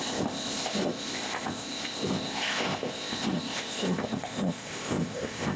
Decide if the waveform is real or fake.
fake